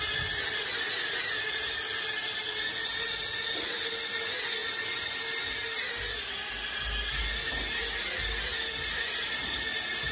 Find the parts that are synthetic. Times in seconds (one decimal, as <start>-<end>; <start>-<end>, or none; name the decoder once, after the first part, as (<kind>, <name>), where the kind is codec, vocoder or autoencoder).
none